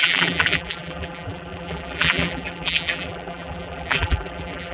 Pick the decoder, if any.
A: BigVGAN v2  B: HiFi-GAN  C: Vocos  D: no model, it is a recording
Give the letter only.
A